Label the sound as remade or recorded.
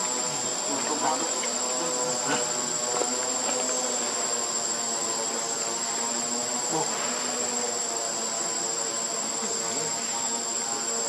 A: recorded